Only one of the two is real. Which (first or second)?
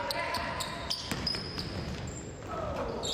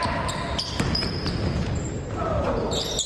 first